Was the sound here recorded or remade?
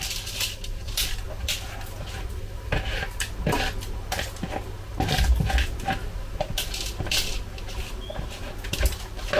recorded